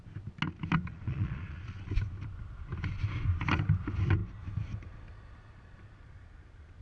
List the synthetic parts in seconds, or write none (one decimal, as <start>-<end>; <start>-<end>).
0.9-1.9